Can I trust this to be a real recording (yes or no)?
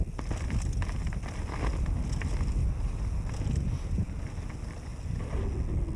yes